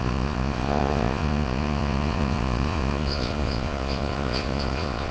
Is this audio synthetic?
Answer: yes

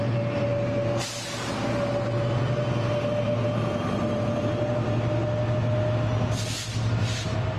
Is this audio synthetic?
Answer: no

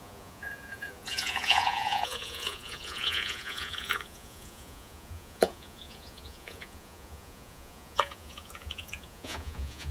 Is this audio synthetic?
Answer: yes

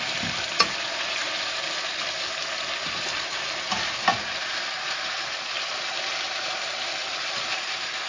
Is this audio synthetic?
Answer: no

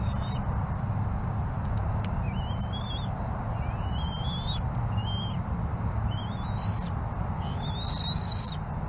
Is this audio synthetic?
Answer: no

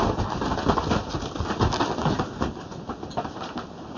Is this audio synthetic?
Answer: no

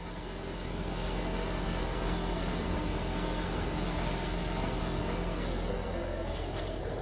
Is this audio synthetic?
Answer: yes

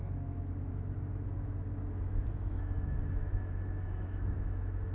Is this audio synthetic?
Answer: yes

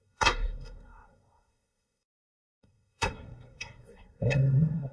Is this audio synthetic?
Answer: yes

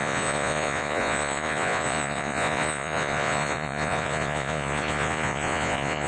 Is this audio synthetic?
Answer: yes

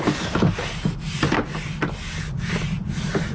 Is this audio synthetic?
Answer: no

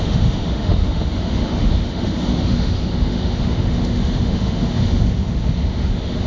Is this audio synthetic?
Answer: yes